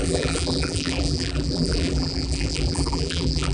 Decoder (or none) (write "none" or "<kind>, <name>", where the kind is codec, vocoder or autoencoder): vocoder, BigVGAN v2